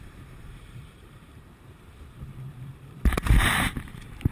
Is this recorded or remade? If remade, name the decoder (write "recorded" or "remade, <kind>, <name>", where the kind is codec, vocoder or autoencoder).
remade, vocoder, BigVGAN v2